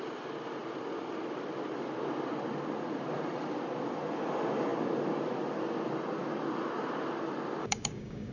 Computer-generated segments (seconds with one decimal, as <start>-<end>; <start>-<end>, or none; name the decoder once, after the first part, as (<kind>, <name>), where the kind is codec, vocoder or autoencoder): 7.6-8.3 (codec, DAC)

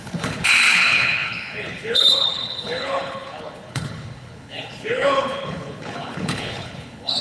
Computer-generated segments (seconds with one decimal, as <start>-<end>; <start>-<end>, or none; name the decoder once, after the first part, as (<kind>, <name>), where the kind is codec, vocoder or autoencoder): 0.0-7.2 (codec, HILCodec)